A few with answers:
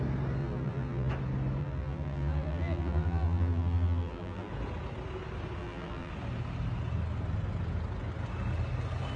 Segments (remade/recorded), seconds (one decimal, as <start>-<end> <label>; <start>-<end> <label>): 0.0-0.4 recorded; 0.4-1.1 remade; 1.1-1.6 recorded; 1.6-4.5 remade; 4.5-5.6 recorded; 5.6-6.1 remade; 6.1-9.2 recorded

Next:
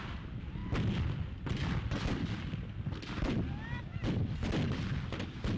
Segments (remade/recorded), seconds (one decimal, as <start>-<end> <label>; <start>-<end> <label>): 0.0-0.6 remade; 0.6-3.8 recorded; 3.8-5.6 remade

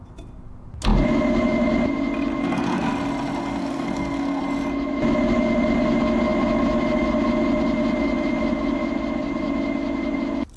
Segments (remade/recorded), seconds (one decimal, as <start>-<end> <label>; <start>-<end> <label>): 0.0-2.4 recorded; 2.4-2.9 remade; 2.9-3.4 recorded; 3.4-4.4 remade; 4.4-10.6 recorded

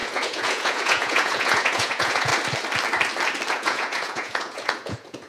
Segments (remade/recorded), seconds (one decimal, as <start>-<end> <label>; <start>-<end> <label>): 0.0-2.3 remade; 2.3-3.5 recorded; 3.5-5.3 remade

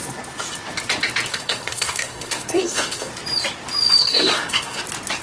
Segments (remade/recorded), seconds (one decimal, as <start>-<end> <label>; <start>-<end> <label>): 0.0-1.3 recorded; 1.3-3.1 remade; 3.1-4.0 recorded; 4.0-4.8 remade; 4.8-5.2 recorded

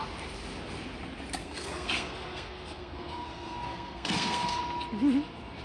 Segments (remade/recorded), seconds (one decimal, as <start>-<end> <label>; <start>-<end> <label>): 0.0-1.4 recorded; 1.4-4.6 remade; 4.6-5.6 recorded

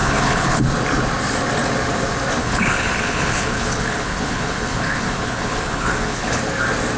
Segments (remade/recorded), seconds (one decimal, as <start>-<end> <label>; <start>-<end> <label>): 0.0-0.6 remade; 0.6-2.4 recorded; 2.4-6.4 remade; 6.4-7.0 recorded